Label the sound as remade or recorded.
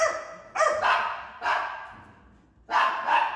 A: recorded